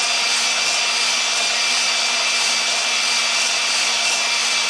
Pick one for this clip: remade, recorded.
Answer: recorded